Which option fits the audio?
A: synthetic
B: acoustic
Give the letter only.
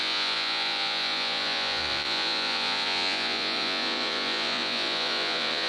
A